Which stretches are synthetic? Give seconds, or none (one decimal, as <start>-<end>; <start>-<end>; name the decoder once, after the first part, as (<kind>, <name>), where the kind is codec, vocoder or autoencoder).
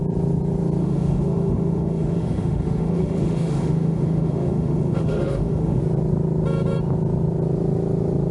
0.8-5.8 (autoencoder, DAC-VAE)